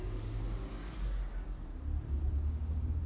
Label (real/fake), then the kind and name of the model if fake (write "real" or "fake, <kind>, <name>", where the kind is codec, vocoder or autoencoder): real